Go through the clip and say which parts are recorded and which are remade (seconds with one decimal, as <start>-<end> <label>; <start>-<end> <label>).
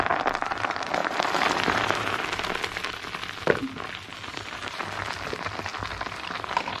0.0-1.0 recorded; 1.0-2.2 remade; 2.2-4.3 recorded; 4.3-4.8 remade; 4.8-6.8 recorded